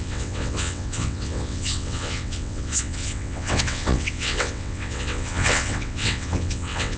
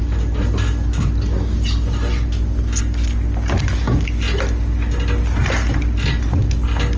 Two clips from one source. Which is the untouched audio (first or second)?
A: second